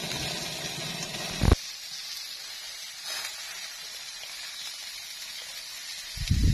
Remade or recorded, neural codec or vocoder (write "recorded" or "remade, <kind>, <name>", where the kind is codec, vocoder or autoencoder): recorded